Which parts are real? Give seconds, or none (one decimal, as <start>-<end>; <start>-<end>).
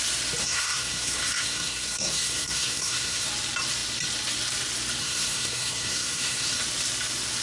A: 0.0-0.4; 3.3-5.0; 6.6-7.4